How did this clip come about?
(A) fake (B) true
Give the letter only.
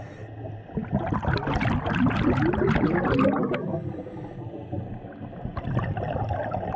B